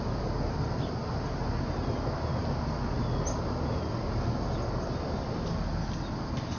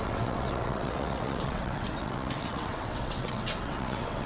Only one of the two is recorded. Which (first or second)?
first